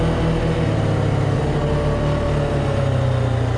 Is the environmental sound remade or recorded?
recorded